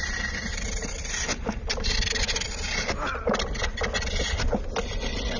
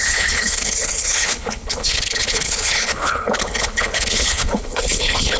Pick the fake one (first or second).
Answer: second